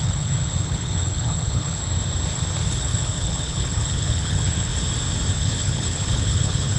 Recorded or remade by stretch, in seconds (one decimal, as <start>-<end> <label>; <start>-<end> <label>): 0.0-1.8 remade; 1.8-2.8 recorded; 2.8-4.7 remade; 4.7-5.3 recorded; 5.3-6.8 remade